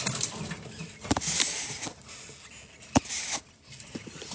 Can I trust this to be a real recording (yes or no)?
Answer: yes